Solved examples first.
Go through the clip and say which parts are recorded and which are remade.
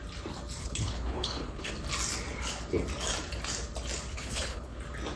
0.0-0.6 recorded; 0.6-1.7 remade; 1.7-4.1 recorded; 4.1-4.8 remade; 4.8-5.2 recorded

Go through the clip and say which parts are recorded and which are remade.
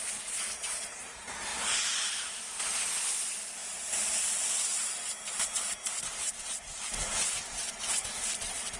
0.0-8.8 recorded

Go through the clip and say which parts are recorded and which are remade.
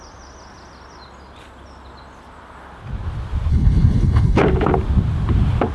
0.0-3.5 recorded; 3.5-4.4 remade; 4.4-5.7 recorded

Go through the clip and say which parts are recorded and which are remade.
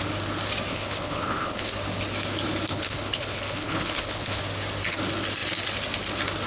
0.0-0.7 recorded; 0.7-1.7 remade; 1.7-2.7 recorded; 2.7-4.4 remade; 4.4-6.5 recorded